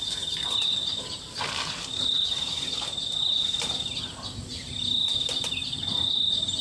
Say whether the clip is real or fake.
real